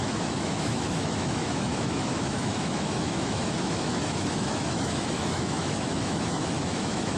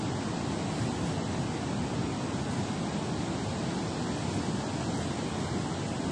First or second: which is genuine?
second